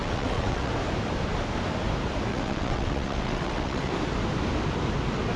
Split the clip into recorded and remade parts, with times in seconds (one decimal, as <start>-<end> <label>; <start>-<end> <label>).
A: 0.0-0.7 remade; 0.7-2.3 recorded; 2.3-3.9 remade; 3.9-5.4 recorded